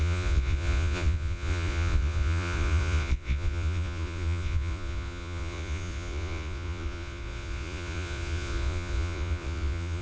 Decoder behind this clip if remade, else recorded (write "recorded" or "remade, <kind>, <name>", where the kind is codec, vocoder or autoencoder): remade, vocoder, Vocos